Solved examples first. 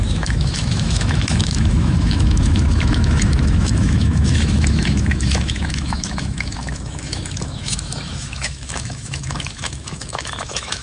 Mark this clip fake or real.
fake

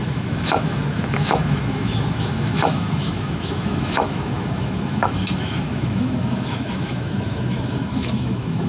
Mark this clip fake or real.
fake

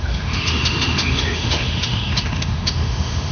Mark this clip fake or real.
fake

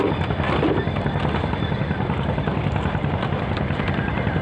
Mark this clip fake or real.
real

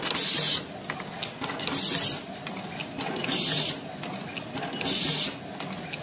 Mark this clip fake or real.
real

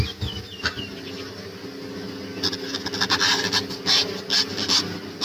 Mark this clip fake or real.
real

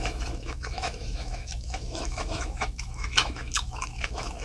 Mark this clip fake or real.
fake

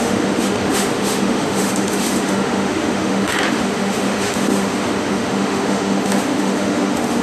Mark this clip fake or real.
fake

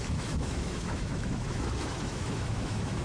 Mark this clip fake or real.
fake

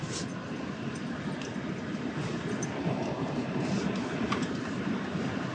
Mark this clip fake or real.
real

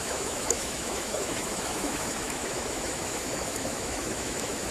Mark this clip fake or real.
fake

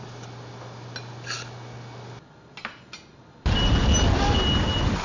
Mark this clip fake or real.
real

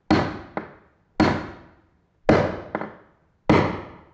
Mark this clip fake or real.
real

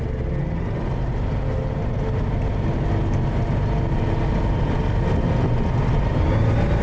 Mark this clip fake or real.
real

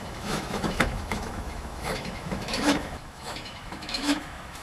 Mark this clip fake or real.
fake